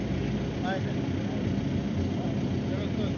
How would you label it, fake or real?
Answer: real